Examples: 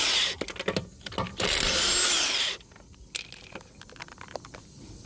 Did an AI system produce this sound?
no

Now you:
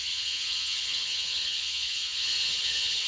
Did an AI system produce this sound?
yes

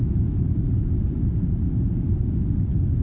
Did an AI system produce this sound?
no